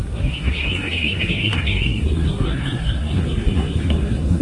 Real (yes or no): no